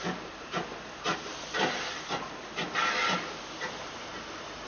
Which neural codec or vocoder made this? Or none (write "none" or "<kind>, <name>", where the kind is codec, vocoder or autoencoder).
none